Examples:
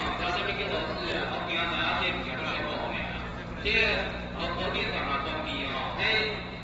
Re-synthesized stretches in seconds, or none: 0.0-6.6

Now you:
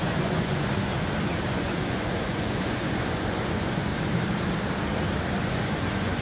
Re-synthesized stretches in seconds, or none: 0.0-0.9; 1.5-3.9; 5.4-6.2

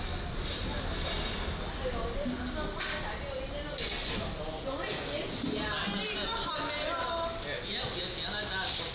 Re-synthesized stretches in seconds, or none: none

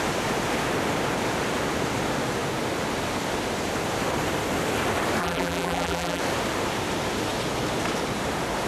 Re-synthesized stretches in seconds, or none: 5.2-6.2